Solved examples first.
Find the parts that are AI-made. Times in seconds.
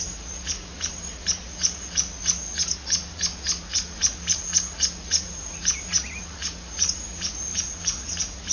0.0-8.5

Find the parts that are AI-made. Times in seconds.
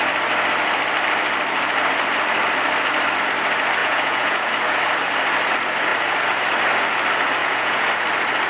3.8-4.5; 7.4-7.9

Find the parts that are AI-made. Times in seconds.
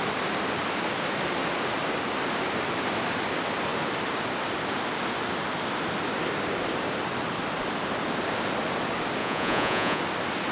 9.2-10.0